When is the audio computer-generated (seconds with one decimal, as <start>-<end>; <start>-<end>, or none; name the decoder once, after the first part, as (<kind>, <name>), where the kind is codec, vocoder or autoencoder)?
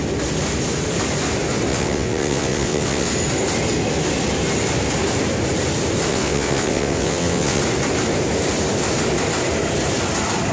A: 1.7-3.1 (vocoder, WaveNeXt); 6.1-7.6